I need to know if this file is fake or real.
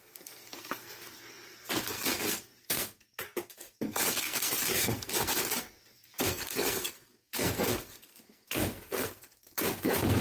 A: fake